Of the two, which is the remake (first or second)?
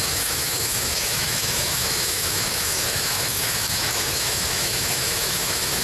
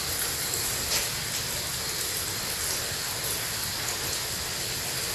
first